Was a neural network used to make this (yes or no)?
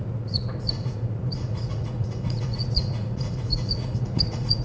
yes